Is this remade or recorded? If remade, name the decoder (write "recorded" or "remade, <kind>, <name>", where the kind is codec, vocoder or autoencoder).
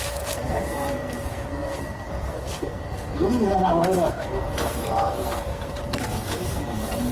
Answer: remade, codec, SNAC